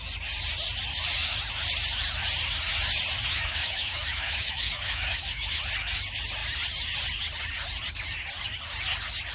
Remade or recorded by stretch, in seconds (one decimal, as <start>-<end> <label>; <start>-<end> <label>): 0.0-3.3 recorded; 3.3-5.6 remade; 5.6-9.3 recorded